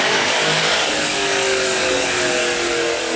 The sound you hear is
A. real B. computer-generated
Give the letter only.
B